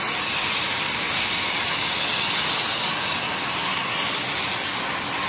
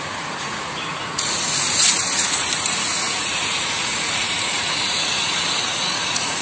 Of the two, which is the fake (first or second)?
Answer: second